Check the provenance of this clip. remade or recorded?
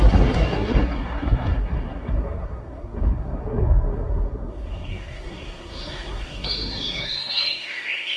remade